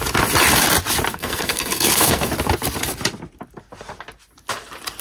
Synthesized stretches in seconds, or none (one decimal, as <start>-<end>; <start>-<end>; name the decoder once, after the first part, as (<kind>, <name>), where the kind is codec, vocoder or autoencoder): 1.1-2.3 (codec, SNAC)

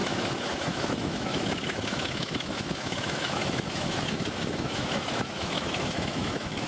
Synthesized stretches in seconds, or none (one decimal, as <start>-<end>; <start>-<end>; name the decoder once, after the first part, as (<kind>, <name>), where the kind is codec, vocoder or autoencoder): 0.0-6.7 (autoencoder, DAC-VAE)

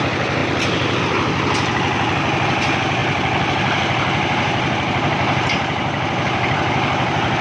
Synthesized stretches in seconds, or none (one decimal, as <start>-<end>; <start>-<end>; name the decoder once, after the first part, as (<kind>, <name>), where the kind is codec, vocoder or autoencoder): 0.4-1.0 (vocoder, BigVGAN v2)

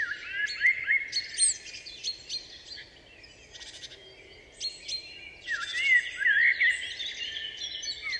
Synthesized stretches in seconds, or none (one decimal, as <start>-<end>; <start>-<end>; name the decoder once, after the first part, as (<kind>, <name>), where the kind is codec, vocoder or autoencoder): none

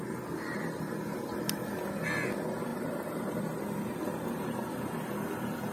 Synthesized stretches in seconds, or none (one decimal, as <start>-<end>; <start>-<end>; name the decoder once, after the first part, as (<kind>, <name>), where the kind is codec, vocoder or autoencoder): 2.7-3.4 (vocoder, BigVGAN v2)